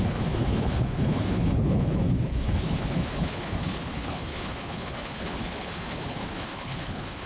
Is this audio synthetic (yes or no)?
yes